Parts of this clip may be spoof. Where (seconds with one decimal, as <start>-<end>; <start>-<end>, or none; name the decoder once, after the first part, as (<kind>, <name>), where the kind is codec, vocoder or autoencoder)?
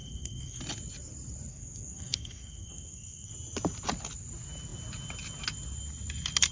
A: 0.0-0.6 (codec, SNAC); 1.5-3.3